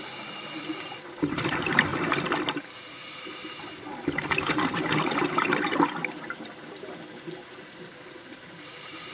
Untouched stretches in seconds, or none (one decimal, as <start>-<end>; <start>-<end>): 1.9-2.6